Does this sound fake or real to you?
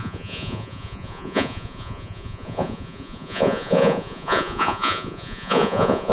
fake